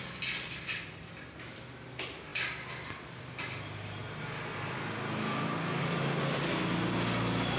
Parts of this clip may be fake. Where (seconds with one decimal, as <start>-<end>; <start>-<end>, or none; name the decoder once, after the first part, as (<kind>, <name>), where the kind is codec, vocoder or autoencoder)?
none